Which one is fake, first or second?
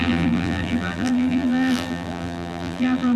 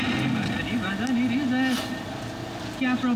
first